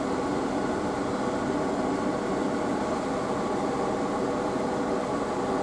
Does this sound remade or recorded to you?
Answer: recorded